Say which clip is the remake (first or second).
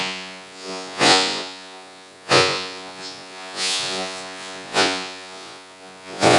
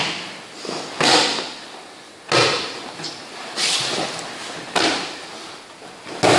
first